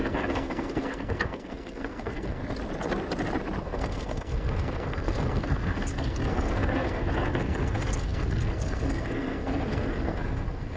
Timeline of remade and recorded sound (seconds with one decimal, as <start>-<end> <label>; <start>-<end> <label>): 0.0-2.4 remade; 2.4-3.6 recorded; 3.6-10.8 remade